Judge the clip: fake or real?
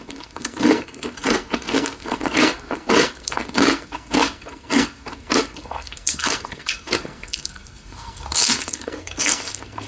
fake